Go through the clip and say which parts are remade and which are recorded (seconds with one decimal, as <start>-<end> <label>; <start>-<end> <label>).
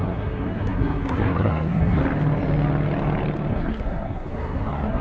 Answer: 0.0-2.0 remade; 2.0-3.5 recorded; 3.5-5.0 remade